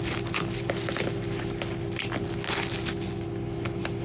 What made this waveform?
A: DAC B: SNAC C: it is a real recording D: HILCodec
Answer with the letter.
C